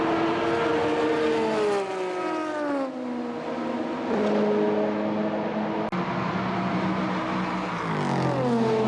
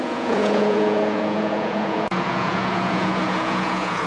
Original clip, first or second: first